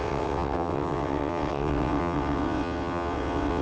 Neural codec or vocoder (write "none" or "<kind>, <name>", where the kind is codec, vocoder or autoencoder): vocoder, WaveNeXt